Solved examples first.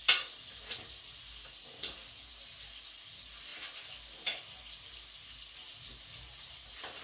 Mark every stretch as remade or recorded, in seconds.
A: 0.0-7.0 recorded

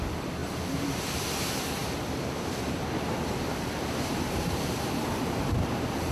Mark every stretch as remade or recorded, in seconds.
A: 0.0-0.4 recorded; 0.4-1.2 remade; 1.2-1.8 recorded; 1.8-5.5 remade; 5.5-6.1 recorded

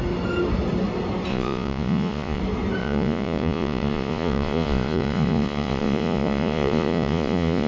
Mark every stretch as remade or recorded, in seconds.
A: 0.0-1.3 recorded; 1.3-2.4 remade; 2.4-2.8 recorded; 2.8-7.7 remade

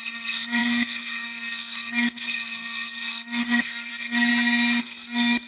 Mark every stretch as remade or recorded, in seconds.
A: 0.0-4.3 remade; 4.3-4.8 recorded; 4.8-5.5 remade